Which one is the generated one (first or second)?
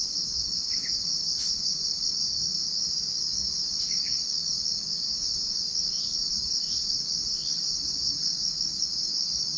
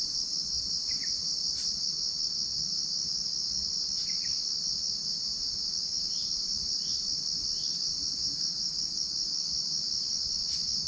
first